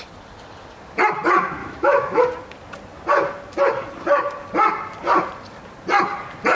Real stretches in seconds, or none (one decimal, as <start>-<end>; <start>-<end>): 0.0-1.6; 2.2-6.5